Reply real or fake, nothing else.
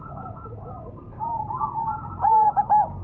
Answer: fake